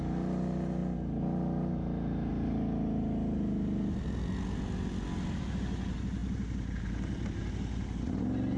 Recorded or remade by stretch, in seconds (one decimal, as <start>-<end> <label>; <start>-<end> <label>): 0.0-8.6 recorded